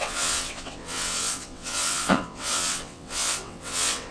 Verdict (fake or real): fake